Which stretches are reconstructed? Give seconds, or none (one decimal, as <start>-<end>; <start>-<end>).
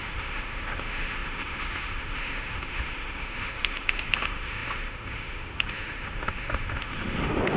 0.0-7.6